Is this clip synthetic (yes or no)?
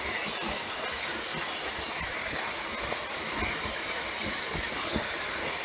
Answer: no